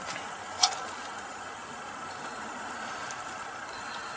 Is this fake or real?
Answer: real